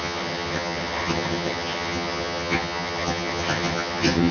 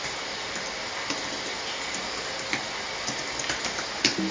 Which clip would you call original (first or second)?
second